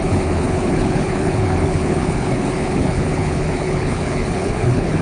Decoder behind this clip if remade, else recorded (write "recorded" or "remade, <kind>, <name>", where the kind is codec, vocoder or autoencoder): remade, codec, HILCodec